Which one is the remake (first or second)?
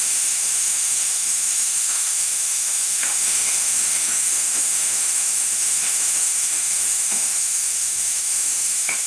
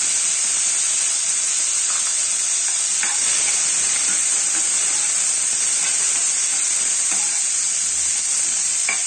first